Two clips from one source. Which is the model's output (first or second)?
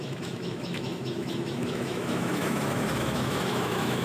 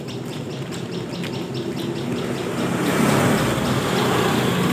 first